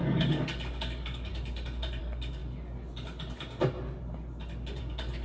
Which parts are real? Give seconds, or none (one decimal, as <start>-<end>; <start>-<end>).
1.3-2.0; 2.4-4.8